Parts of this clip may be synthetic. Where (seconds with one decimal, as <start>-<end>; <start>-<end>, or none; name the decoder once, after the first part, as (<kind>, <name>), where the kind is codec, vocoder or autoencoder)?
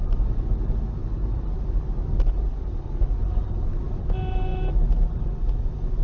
none